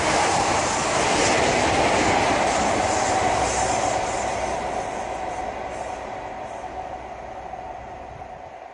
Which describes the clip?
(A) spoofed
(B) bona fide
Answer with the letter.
B